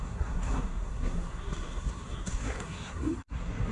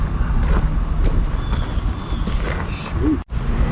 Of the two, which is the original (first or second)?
second